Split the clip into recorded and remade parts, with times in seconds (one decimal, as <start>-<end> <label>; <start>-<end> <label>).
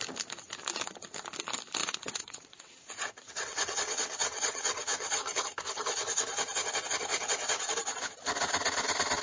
0.0-1.8 recorded; 1.8-5.4 remade; 5.4-7.1 recorded; 7.1-7.7 remade; 7.7-9.2 recorded